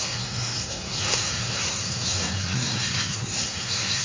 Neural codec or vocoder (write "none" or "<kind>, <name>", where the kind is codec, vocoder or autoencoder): codec, SNAC